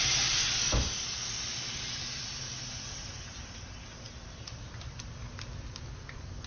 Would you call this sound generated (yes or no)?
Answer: no